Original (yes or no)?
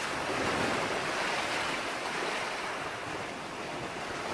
yes